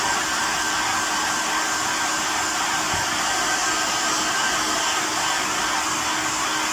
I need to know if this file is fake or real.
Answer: real